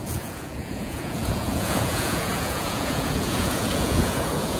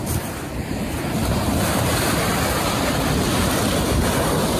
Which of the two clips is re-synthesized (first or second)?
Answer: first